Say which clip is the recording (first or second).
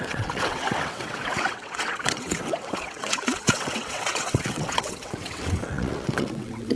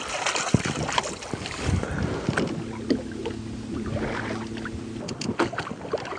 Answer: second